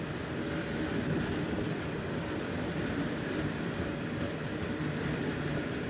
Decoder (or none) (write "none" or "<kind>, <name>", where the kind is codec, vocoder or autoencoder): vocoder, BigVGAN v2